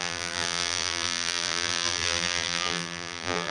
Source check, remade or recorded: remade